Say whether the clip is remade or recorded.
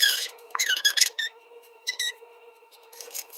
remade